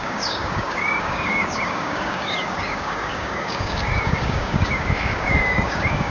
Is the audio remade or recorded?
remade